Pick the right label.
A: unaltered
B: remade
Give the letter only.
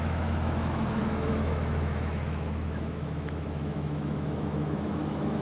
B